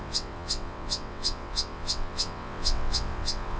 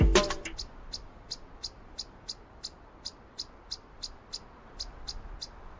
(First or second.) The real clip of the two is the second